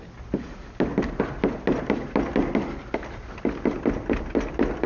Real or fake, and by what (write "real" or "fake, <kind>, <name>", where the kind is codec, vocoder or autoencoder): real